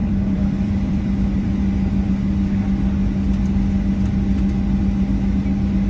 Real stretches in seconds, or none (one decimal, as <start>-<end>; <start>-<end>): 2.1-5.9